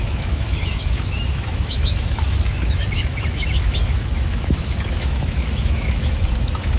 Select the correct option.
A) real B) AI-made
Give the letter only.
B